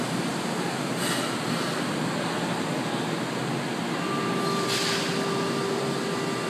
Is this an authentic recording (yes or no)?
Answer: yes